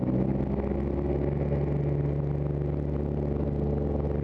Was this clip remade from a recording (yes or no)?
no